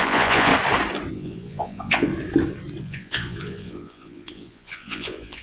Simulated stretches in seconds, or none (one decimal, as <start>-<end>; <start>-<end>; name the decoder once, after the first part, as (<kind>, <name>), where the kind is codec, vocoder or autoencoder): 0.0-0.5 (vocoder, Vocos); 1.1-2.1; 2.8-5.4